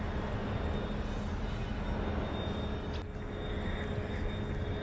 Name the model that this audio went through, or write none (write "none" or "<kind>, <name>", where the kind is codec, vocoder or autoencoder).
none